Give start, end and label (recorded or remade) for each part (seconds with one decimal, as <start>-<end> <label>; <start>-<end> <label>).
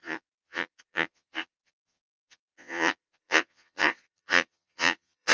0.0-5.3 remade